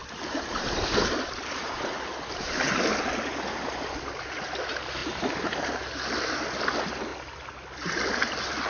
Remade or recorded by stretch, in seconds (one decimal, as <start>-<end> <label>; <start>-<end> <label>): 0.0-2.8 remade; 2.8-5.0 recorded; 5.0-6.4 remade; 6.4-8.7 recorded